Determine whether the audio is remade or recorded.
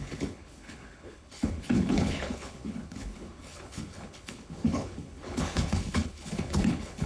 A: remade